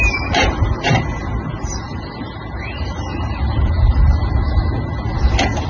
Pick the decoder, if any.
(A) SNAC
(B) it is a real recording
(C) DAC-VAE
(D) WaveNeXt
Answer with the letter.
B